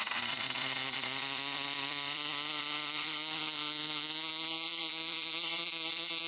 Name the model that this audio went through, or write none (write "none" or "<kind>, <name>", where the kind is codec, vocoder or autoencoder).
vocoder, HiFi-GAN